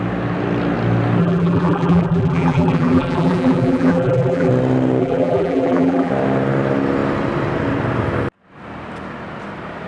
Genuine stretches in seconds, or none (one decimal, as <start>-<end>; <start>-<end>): 0.0-1.2; 4.5-5.0; 6.1-9.9